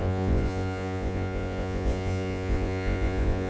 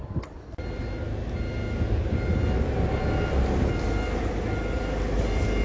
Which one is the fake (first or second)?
first